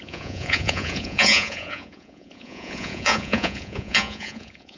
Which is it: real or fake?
fake